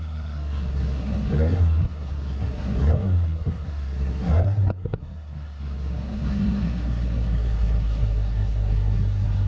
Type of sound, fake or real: fake